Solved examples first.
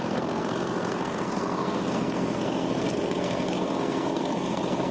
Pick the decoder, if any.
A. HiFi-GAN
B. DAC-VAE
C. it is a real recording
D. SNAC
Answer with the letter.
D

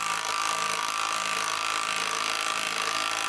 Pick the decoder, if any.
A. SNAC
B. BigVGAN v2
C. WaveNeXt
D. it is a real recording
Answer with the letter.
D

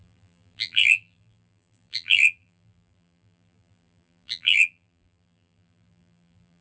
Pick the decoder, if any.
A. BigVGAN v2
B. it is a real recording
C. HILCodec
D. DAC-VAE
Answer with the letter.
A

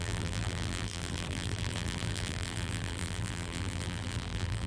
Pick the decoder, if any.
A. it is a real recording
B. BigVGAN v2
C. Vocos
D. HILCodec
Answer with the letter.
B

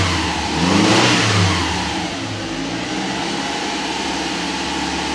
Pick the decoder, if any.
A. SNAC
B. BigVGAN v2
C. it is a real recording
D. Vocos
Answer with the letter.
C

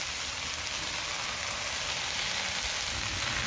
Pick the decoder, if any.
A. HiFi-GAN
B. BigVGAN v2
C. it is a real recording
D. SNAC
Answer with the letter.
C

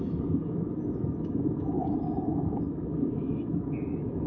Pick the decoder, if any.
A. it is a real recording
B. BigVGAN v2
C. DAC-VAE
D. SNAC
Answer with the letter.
C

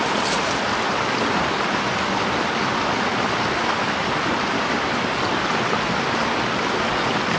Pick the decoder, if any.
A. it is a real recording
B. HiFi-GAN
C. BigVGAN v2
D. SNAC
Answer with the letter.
A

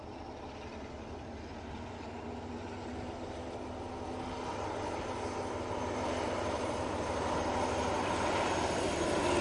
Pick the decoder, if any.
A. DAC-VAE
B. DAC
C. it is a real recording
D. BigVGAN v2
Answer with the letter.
C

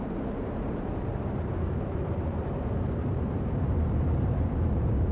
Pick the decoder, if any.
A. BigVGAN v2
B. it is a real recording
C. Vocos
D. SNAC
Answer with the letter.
A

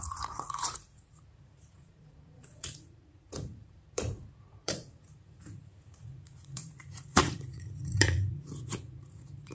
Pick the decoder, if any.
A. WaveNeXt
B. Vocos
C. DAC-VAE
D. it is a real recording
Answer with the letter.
B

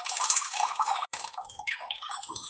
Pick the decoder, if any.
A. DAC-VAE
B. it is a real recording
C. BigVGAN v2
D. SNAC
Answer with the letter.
A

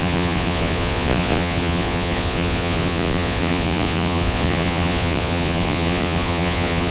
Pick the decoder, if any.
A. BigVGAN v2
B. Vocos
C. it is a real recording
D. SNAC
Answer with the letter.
B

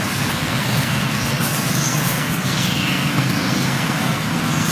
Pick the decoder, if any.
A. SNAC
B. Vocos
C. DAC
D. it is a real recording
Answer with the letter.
A